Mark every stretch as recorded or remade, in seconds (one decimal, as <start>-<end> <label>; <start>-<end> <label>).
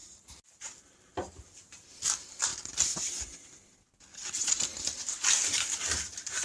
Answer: 0.0-2.5 remade; 2.5-5.3 recorded; 5.3-6.4 remade